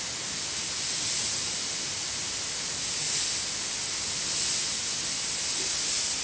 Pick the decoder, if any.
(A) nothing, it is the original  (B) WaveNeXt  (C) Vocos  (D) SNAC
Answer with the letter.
A